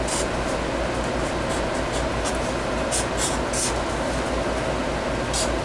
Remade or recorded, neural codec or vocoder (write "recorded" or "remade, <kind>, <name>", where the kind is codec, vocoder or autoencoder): recorded